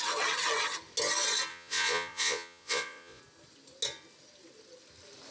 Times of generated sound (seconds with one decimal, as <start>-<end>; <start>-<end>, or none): 1.5-3.2